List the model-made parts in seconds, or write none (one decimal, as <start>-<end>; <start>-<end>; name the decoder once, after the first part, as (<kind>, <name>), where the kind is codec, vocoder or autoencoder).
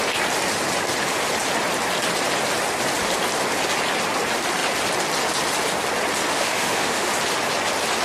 6.3-7.1 (autoencoder, DAC-VAE)